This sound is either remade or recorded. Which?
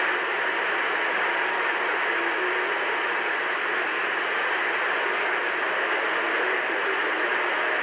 recorded